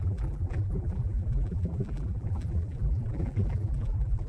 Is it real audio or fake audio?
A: fake